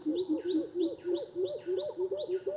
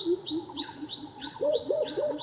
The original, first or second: first